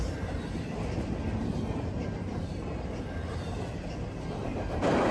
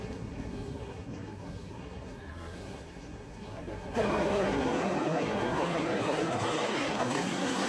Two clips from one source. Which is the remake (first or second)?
second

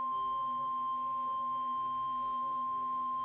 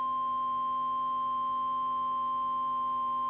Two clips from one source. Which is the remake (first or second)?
first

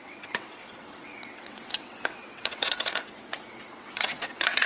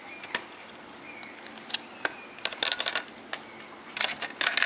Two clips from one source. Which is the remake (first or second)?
first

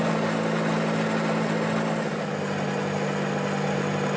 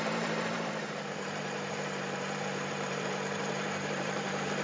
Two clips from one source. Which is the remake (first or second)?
second